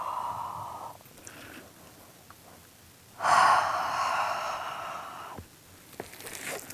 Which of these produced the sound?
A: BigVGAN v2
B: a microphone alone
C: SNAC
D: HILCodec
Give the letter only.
B